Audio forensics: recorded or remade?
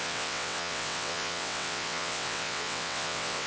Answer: remade